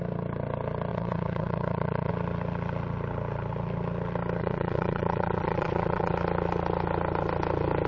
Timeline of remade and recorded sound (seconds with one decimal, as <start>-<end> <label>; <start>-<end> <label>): 0.0-0.9 recorded; 0.9-2.1 remade; 2.1-4.4 recorded; 4.4-6.1 remade; 6.1-7.9 recorded